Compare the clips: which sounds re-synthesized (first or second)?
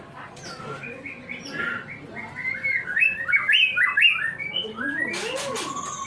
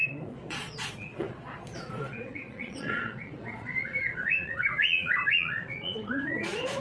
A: second